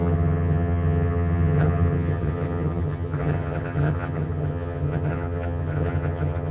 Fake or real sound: fake